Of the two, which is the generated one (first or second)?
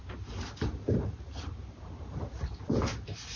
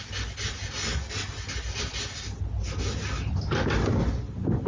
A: first